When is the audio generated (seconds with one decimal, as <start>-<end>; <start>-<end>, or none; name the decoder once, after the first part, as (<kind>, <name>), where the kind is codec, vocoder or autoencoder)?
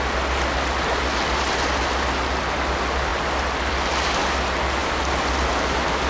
none